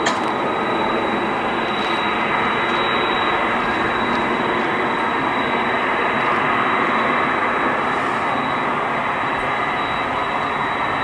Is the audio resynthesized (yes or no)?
no